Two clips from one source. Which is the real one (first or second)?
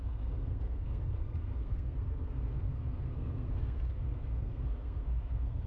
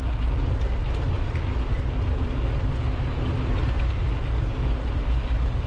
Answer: second